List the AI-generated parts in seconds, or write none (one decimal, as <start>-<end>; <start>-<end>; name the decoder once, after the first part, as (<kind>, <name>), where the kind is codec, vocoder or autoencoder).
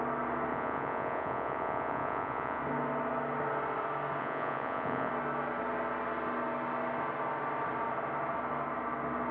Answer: 0.5-2.6 (vocoder, Vocos); 4.2-5.1